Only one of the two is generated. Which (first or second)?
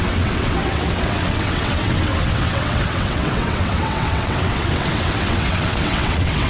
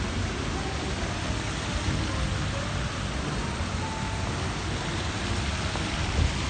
first